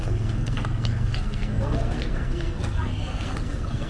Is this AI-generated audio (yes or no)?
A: yes